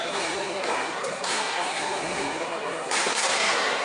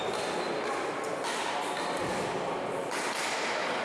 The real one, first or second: second